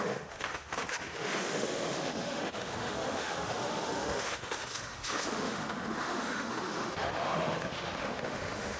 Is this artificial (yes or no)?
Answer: yes